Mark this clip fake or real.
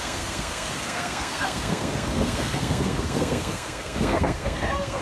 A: fake